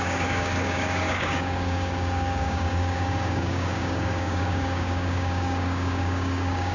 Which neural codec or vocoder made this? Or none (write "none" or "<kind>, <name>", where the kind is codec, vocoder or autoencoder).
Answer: codec, DAC